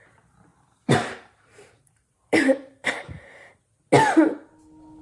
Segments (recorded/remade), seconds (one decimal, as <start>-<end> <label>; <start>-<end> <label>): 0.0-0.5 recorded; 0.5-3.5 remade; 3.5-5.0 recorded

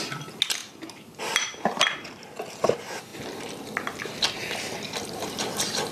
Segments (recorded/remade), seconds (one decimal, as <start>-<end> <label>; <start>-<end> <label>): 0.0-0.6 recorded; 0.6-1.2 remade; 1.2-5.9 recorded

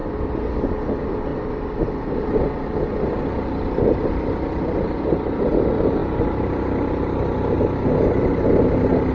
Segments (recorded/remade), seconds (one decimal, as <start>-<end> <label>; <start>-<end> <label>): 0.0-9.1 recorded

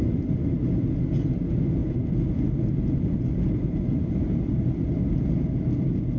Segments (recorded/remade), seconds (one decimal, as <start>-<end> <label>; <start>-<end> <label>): 0.0-1.8 recorded; 1.8-5.5 remade; 5.5-6.2 recorded

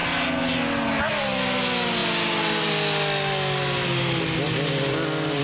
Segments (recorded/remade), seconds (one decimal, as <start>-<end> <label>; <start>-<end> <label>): 0.0-5.4 recorded